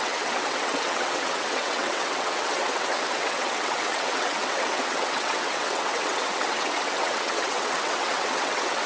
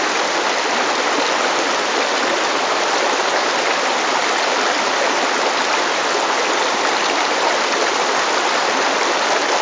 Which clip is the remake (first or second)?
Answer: first